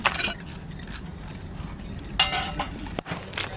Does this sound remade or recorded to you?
recorded